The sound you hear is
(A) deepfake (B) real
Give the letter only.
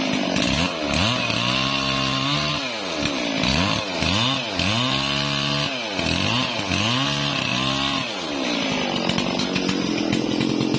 B